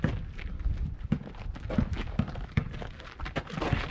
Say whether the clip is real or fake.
real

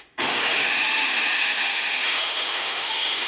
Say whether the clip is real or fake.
fake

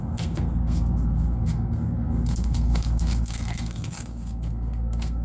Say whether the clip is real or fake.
fake